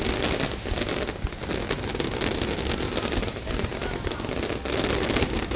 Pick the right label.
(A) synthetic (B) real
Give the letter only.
B